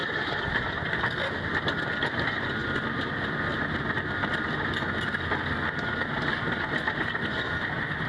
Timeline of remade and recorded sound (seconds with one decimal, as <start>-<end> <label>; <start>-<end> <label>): 0.0-0.7 remade; 0.7-2.6 recorded; 2.6-3.1 remade; 3.1-3.5 recorded; 3.5-4.4 remade; 4.4-8.1 recorded